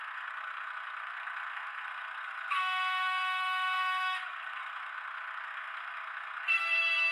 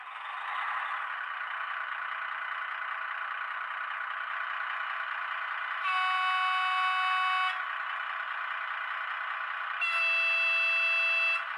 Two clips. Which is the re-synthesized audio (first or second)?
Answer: first